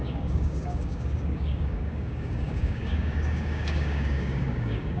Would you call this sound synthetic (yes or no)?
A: yes